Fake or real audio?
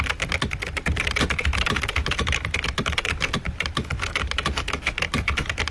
real